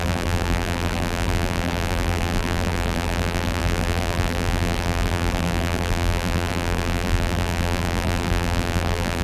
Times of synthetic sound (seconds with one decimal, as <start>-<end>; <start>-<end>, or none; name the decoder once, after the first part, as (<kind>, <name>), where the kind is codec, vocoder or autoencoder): 0.0-9.2 (vocoder, BigVGAN v2)